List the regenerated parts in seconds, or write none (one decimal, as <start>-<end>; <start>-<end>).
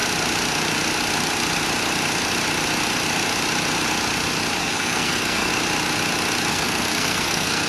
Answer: 4.6-5.5; 6.5-7.7